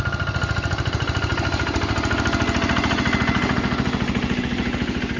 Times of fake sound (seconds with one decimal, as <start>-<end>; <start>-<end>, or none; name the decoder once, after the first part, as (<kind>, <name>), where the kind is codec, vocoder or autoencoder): none